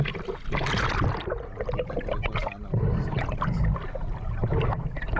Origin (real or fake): real